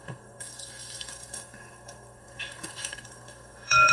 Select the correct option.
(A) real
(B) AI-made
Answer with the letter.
B